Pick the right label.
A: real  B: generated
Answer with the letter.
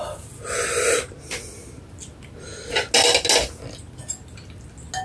A